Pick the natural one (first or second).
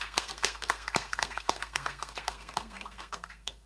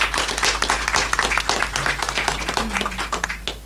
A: second